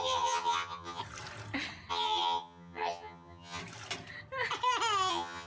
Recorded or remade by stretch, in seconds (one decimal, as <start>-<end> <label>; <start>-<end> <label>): 0.0-1.0 remade; 1.0-1.9 recorded; 1.9-3.6 remade; 3.6-5.1 recorded; 5.1-5.5 remade